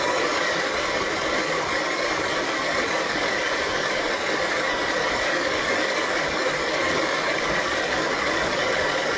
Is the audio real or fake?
fake